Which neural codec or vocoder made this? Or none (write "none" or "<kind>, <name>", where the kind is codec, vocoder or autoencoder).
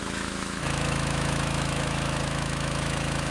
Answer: autoencoder, DAC-VAE